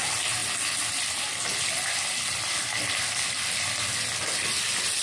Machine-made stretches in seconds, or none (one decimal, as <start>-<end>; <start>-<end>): none